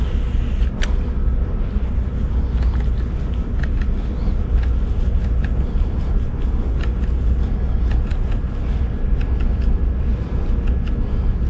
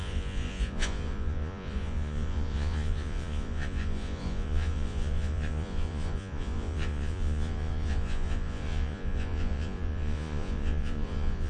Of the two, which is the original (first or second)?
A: first